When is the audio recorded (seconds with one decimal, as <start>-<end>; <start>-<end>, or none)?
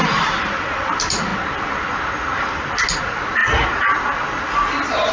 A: 1.3-3.0; 3.4-5.1